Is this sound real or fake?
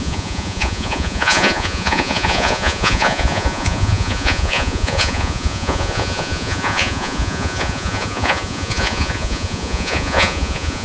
fake